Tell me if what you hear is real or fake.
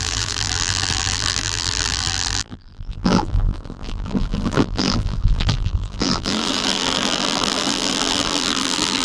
fake